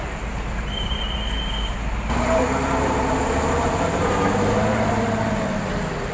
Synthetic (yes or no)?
yes